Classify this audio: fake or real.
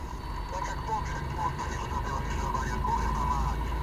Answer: real